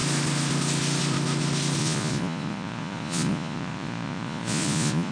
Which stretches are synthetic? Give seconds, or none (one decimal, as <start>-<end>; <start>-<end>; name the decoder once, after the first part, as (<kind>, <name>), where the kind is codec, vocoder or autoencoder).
1.8-5.1 (vocoder, Vocos)